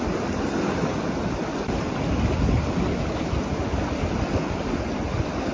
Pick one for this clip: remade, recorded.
recorded